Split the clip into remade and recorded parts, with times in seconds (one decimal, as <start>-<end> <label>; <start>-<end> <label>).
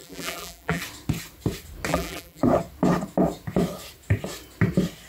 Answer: 0.0-0.8 remade; 0.8-1.9 recorded; 1.9-2.4 remade; 2.4-5.1 recorded